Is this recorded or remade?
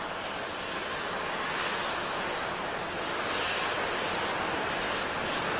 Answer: recorded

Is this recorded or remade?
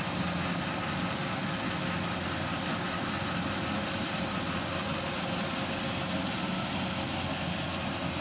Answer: recorded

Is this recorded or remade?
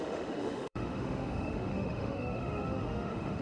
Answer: remade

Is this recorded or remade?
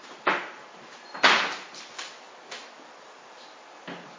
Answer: recorded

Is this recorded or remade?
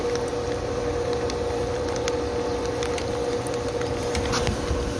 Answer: recorded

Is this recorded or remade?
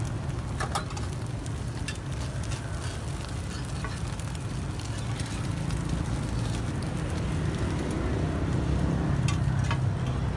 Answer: recorded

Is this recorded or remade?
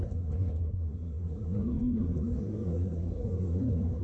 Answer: remade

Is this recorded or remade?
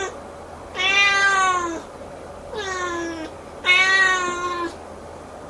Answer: recorded